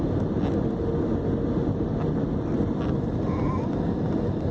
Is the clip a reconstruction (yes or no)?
no